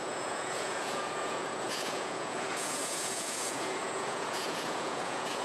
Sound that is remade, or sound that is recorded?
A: remade